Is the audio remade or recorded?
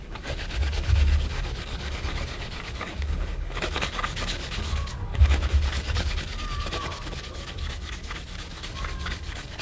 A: remade